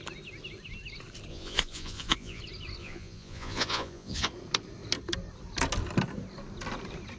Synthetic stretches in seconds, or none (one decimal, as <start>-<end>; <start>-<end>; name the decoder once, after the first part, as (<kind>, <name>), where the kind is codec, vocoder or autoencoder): 1.3-2.4 (vocoder, Vocos); 2.8-4.3